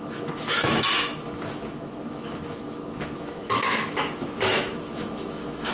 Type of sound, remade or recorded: remade